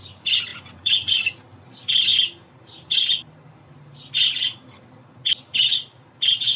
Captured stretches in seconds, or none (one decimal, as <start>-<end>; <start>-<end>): 0.0-0.5; 1.1-6.6